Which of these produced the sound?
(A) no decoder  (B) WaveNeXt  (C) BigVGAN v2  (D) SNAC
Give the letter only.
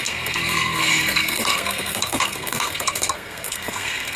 D